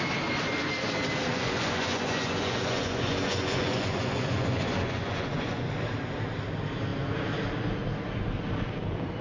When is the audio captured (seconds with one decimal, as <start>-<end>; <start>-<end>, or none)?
0.0-1.3; 5.7-9.2